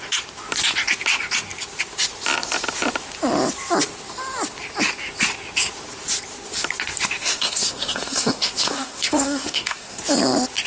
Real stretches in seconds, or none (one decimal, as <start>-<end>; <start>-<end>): 0.0-7.2; 10.0-10.7